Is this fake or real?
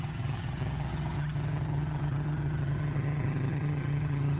fake